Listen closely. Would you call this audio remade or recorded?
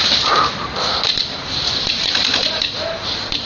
recorded